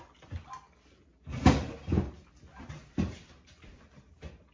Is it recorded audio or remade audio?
recorded